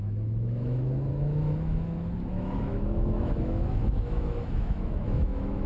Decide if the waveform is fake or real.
fake